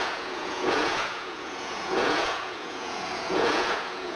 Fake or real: fake